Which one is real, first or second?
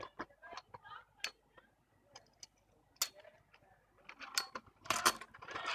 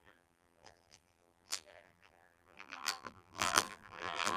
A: first